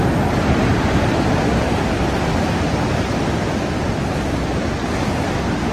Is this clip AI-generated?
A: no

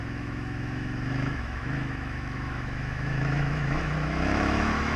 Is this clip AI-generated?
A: yes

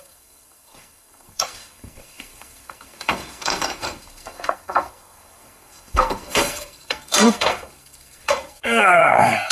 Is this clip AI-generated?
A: yes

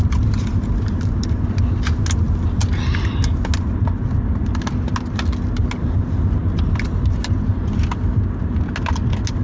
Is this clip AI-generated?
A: no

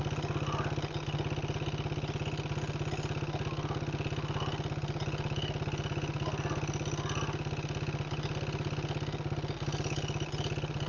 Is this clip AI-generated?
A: no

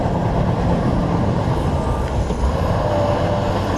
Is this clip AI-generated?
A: no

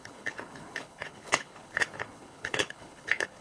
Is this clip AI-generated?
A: yes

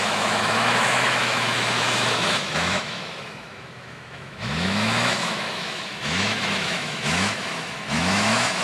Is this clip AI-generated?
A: yes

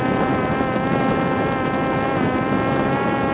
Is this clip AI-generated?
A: no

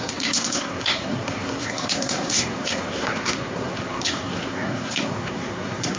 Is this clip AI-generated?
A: yes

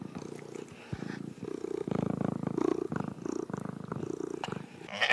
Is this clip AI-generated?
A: no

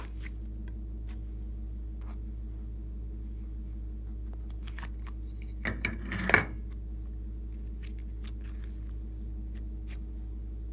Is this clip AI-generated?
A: no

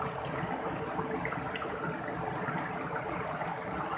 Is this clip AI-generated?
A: no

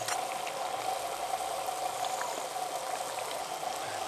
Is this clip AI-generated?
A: no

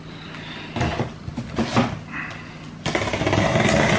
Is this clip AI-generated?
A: no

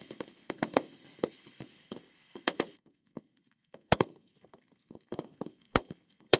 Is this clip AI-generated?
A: yes